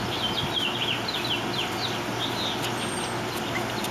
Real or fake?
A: real